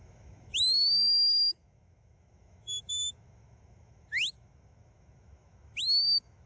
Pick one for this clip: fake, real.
fake